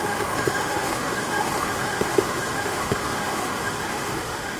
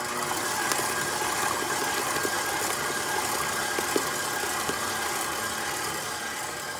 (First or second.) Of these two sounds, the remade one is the first